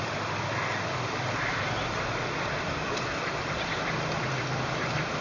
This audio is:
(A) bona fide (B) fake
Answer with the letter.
B